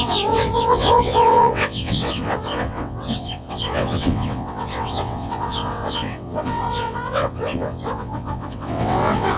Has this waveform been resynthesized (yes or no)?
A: yes